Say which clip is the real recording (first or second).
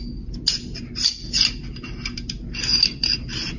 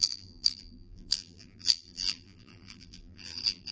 first